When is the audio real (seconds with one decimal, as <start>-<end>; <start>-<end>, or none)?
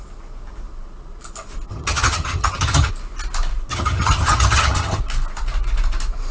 0.0-1.7; 2.9-3.7; 5.0-6.3